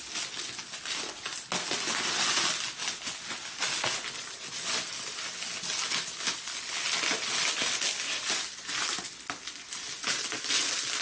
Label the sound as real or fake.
real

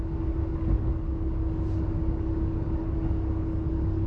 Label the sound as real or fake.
fake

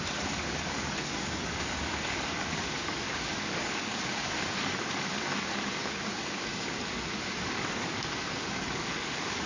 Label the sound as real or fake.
fake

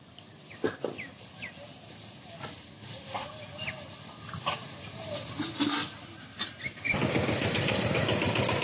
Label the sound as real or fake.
real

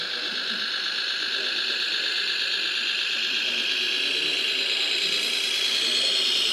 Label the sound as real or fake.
real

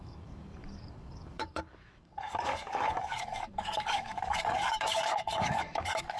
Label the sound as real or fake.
fake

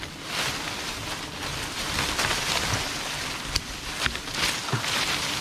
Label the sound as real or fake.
real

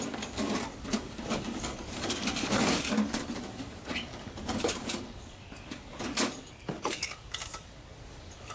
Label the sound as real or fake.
fake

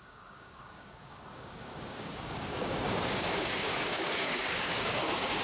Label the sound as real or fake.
fake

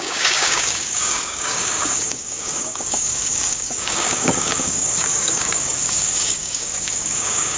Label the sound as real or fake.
fake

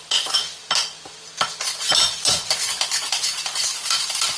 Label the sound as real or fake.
real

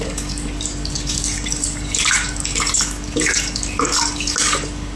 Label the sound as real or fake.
fake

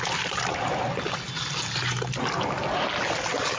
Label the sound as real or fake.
real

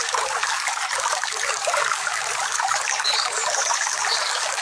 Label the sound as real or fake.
fake